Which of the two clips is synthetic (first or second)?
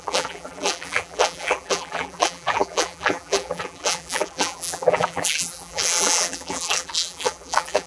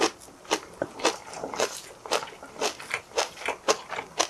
first